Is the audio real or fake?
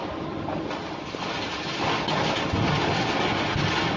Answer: real